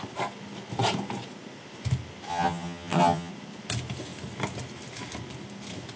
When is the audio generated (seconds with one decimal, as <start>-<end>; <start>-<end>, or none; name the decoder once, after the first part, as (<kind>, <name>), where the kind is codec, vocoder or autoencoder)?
2.3-3.3 (vocoder, HiFi-GAN)